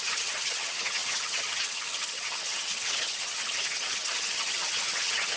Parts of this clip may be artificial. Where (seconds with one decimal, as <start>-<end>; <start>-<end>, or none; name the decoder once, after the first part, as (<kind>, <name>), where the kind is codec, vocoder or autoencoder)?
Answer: 0.0-5.4 (vocoder, HiFi-GAN)